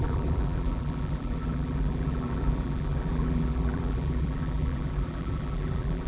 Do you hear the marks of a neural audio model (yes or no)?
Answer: yes